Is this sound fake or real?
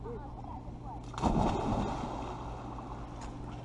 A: real